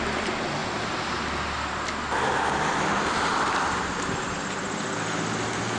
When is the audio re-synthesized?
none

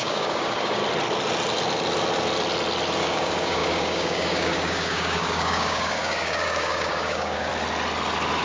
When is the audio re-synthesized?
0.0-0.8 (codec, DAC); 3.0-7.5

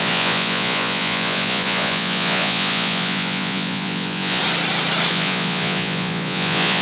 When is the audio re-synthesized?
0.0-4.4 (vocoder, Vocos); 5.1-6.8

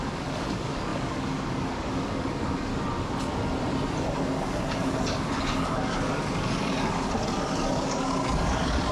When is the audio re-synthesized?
0.0-2.7 (codec, DAC); 4.0-8.9

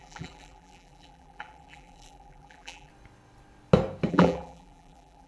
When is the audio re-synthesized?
0.0-2.9 (vocoder, BigVGAN v2); 4.1-5.3